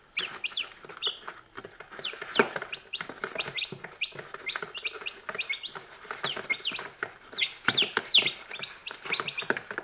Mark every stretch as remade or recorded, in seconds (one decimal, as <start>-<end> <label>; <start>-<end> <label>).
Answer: 0.0-9.8 recorded